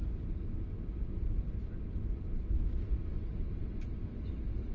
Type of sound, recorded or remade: recorded